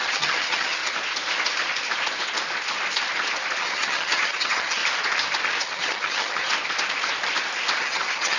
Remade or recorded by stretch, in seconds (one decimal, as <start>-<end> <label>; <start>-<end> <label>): 0.0-0.8 remade; 0.8-3.6 recorded; 3.6-4.8 remade; 4.8-5.6 recorded; 5.6-6.4 remade; 6.4-7.8 recorded; 7.8-8.4 remade